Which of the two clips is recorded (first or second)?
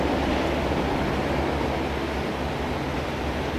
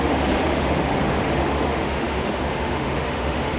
first